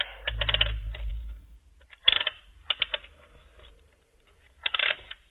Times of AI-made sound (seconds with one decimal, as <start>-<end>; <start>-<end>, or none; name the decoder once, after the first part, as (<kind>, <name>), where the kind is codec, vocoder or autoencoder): 1.1-1.6 (vocoder, BigVGAN v2); 2.0-2.8; 3.5-5.3